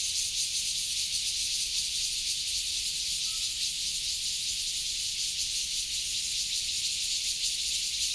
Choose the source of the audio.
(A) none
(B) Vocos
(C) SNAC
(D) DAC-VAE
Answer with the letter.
A